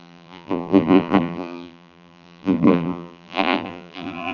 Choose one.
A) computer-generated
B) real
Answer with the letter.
A